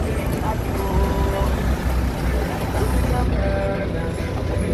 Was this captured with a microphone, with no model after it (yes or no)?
yes